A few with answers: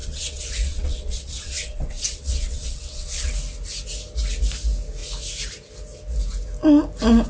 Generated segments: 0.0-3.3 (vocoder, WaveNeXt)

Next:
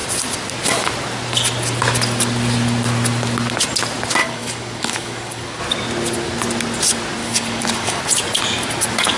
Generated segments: 4.2-5.6 (codec, DAC); 7.2-8.0

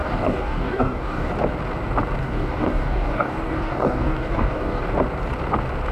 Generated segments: 0.0-1.3 (codec, DAC); 2.2-4.9

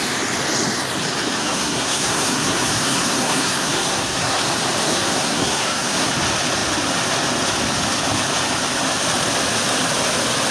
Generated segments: 1.4-4.4 (codec, SNAC); 4.9-6.1

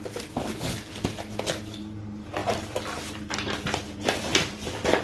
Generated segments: 2.4-3.3 (vocoder, BigVGAN v2); 4.3-5.0

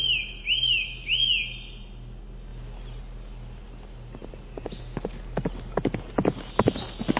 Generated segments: none